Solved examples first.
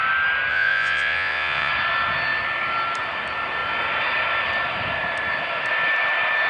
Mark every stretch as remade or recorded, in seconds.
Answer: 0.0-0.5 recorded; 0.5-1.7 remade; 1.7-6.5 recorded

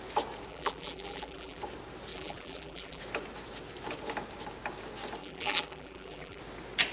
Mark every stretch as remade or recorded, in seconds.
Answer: 0.0-0.5 recorded; 0.5-1.6 remade; 1.6-2.1 recorded; 2.1-3.0 remade; 3.0-5.2 recorded; 5.2-6.4 remade; 6.4-6.9 recorded

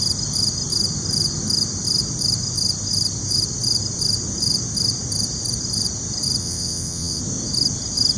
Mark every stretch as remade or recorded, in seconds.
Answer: 0.0-6.4 recorded; 6.4-7.2 remade; 7.2-8.2 recorded

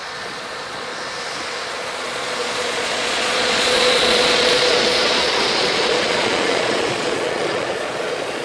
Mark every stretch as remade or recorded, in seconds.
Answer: 0.0-0.9 remade; 0.9-1.7 recorded; 1.7-8.4 remade